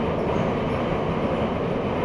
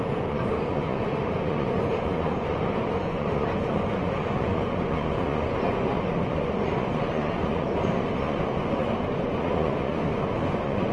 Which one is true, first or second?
first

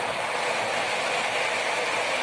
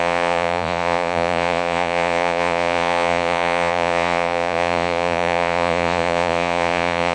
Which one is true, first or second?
first